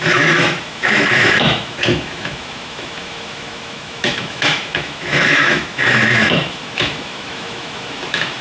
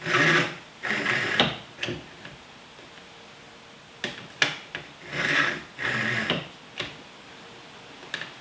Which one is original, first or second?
second